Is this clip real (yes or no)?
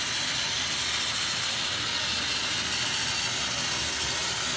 yes